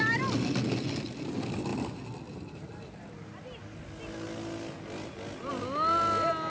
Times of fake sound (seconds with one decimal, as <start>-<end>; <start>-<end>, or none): none